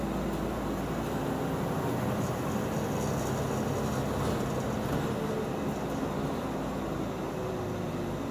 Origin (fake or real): real